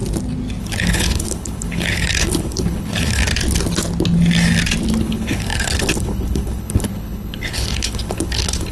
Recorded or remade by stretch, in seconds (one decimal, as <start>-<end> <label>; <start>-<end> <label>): 0.0-0.6 recorded; 0.6-3.2 remade; 3.2-5.0 recorded; 5.0-8.7 remade